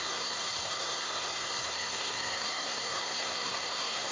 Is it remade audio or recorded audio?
remade